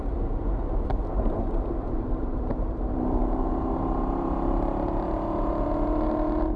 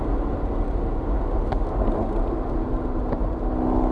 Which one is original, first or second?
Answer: second